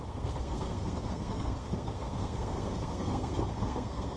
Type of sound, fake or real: fake